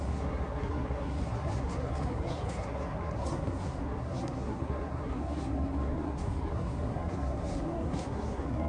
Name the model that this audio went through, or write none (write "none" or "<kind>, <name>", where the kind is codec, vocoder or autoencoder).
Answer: codec, SNAC